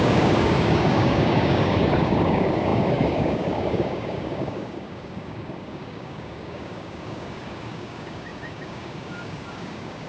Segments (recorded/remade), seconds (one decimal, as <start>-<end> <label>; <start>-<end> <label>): 0.0-10.1 remade